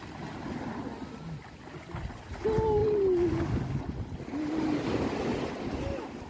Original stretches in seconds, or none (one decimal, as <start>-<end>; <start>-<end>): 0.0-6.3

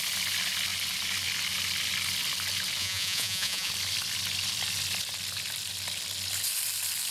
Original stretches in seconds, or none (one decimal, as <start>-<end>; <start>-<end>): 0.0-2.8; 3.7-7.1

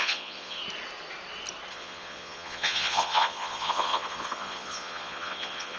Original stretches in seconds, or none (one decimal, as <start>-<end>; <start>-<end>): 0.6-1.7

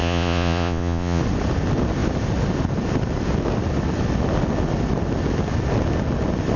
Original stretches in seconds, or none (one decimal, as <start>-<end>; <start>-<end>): 1.2-6.6